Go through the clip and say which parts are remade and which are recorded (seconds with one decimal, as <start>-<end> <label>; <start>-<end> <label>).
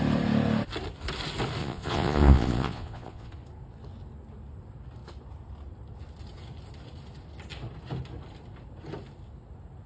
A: 0.0-1.6 recorded; 1.6-3.3 remade; 3.3-9.9 recorded